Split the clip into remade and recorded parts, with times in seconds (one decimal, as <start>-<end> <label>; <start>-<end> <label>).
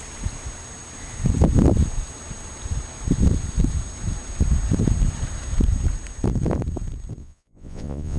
0.0-7.2 recorded; 7.2-8.2 remade